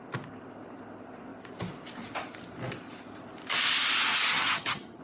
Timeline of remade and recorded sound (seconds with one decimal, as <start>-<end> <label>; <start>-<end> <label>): 0.0-4.3 recorded; 4.3-5.0 remade